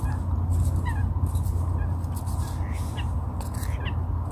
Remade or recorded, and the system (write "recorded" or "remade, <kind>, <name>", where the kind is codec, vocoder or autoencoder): recorded